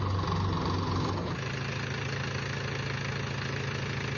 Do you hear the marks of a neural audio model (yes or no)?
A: no